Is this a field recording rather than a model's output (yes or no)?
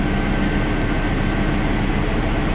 yes